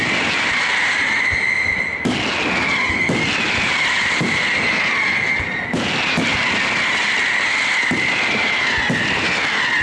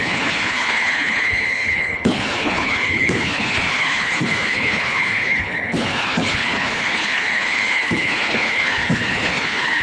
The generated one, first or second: second